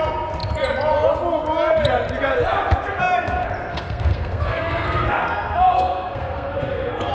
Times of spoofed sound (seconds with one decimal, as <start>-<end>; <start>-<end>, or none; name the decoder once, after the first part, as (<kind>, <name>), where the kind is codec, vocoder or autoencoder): 3.7-7.1 (codec, SNAC)